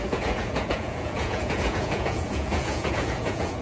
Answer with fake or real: fake